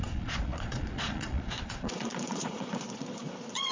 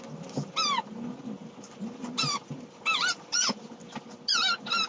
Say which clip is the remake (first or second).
first